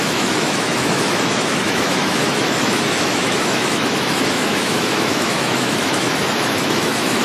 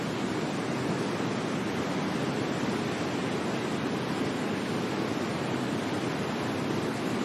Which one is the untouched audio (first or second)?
second